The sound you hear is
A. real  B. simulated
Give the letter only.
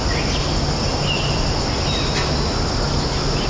A